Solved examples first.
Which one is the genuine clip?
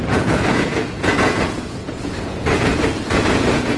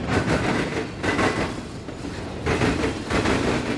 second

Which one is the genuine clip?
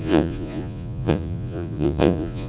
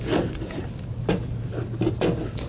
second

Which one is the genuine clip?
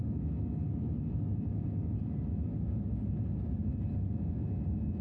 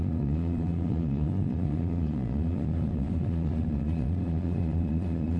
first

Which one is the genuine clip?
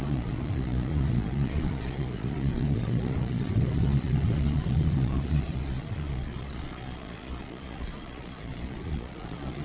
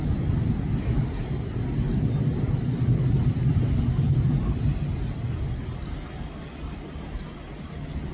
second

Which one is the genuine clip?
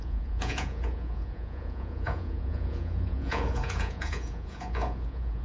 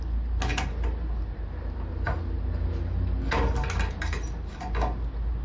second